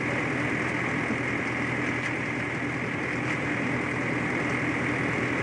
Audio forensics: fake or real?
real